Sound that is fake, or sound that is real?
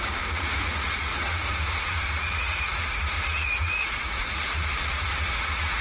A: fake